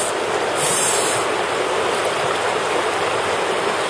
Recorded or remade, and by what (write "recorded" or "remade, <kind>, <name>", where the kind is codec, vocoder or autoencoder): recorded